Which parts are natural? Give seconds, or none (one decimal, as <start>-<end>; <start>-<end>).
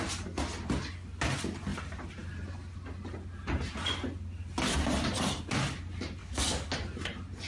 0.0-6.2; 6.7-7.5